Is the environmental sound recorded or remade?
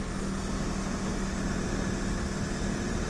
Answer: recorded